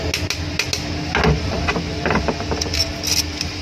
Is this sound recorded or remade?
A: recorded